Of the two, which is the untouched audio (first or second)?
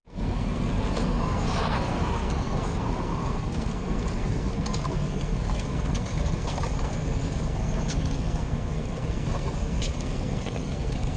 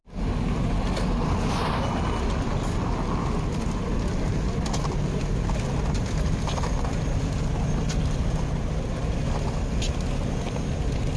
second